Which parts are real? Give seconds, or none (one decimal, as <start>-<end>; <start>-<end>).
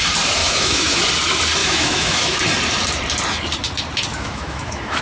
0.0-0.4; 1.0-1.6; 2.4-4.1